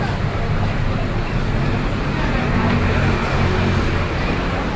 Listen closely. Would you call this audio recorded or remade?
recorded